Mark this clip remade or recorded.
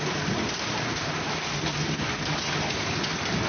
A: recorded